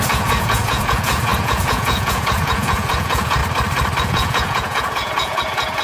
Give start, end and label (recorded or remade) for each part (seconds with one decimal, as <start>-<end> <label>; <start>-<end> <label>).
0.0-3.4 remade; 3.4-4.0 recorded; 4.0-5.8 remade

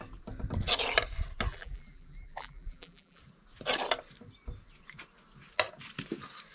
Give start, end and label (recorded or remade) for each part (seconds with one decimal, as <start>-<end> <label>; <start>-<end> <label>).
0.0-1.5 recorded; 1.5-3.2 remade; 3.2-6.5 recorded